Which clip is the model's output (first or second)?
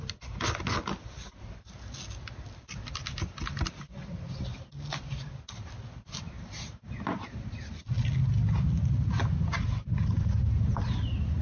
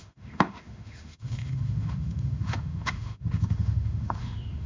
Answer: second